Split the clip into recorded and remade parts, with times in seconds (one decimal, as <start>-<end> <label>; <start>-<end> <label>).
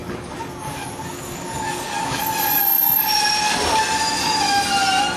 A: 0.0-2.2 remade; 2.2-5.2 recorded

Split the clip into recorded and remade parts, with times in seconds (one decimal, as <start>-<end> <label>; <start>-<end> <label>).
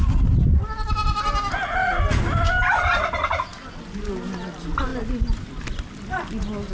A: 0.0-6.7 recorded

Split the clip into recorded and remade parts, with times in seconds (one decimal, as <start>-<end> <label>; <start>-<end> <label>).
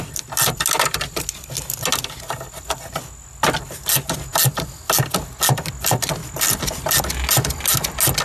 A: 0.0-8.2 recorded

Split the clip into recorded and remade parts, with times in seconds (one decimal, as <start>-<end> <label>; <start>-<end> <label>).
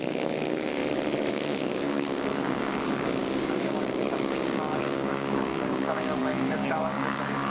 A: 0.0-0.8 remade; 0.8-1.3 recorded; 1.3-7.5 remade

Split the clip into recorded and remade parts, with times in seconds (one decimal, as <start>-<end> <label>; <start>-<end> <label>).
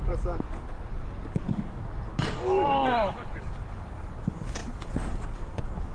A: 0.0-5.9 remade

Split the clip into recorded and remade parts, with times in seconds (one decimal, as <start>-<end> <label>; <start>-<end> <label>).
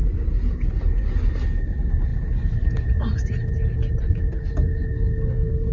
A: 0.0-5.7 recorded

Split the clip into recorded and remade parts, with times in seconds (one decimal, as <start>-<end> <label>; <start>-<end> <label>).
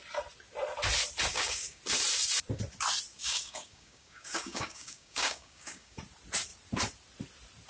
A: 0.0-1.3 recorded; 1.3-1.8 remade; 1.8-3.1 recorded; 3.1-6.0 remade; 6.0-7.7 recorded